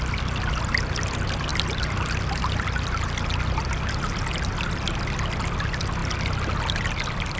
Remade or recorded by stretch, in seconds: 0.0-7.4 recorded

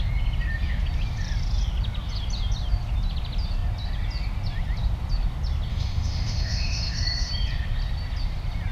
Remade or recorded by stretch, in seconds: 0.0-5.7 recorded; 5.7-7.3 remade; 7.3-8.7 recorded